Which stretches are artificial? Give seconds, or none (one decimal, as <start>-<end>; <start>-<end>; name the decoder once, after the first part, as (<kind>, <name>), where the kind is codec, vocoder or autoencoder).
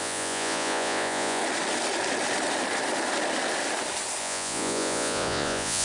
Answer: 0.0-1.4 (vocoder, Vocos); 4.2-5.8